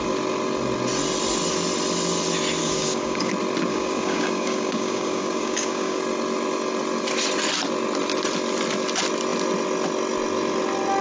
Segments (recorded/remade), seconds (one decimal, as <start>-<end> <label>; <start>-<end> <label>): 0.0-2.6 recorded; 2.6-3.3 remade; 3.3-3.7 recorded; 3.7-6.0 remade; 6.0-11.0 recorded